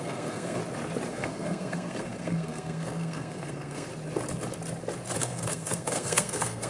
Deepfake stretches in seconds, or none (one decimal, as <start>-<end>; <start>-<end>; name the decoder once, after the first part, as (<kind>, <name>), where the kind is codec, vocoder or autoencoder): 0.0-0.6 (codec, SNAC); 1.1-3.9; 5.2-6.7